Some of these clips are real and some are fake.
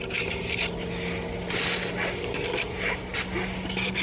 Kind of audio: real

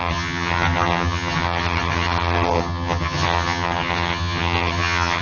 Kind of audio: fake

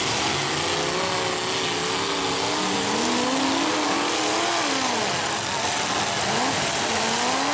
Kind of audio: real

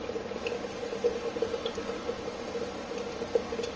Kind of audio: real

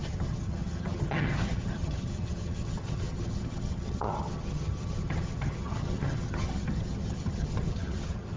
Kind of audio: fake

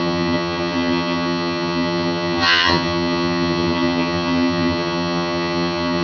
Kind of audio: fake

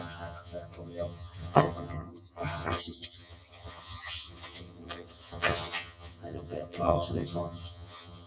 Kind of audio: fake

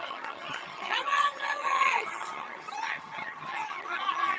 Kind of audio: fake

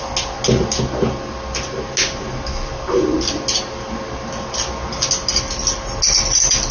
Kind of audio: real